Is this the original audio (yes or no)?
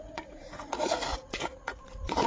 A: no